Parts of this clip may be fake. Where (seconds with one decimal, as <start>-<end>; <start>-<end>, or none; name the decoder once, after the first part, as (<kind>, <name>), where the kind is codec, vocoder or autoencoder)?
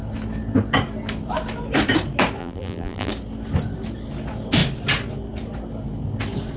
2.4-3.1 (vocoder, BigVGAN v2)